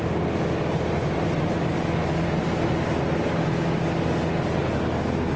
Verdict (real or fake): real